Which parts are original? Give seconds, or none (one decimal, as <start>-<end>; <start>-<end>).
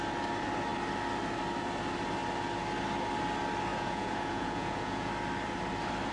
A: 0.0-3.7; 5.1-6.1